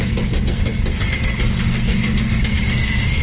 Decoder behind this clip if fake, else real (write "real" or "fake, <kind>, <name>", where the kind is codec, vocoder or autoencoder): fake, codec, SNAC